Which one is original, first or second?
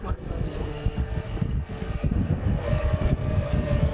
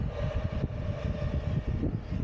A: second